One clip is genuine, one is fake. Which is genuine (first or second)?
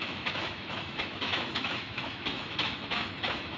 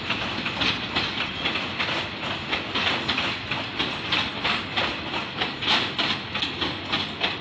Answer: second